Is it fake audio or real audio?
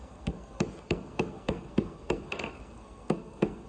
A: fake